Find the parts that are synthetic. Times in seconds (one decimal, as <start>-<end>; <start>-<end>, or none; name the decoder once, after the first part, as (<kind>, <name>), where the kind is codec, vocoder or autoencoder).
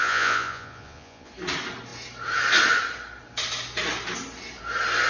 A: 0.0-1.3 (vocoder, Vocos)